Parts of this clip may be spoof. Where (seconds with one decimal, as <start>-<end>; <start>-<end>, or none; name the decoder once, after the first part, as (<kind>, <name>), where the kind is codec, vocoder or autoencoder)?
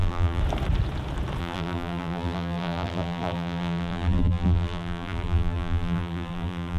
0.0-0.4 (vocoder, BigVGAN v2); 1.4-6.8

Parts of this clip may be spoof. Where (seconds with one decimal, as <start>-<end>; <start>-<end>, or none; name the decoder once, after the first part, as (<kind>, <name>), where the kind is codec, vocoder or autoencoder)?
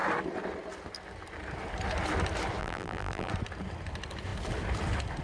2.6-3.3 (vocoder, BigVGAN v2)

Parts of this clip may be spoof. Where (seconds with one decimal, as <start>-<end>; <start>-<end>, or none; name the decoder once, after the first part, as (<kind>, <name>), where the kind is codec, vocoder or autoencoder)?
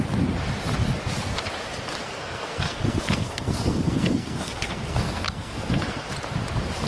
2.0-6.1 (codec, SNAC)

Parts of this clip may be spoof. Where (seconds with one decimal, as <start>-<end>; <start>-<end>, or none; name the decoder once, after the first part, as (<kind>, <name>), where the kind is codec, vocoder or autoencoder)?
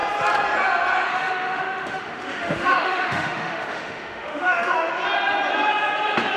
1.1-4.9 (autoencoder, DAC-VAE)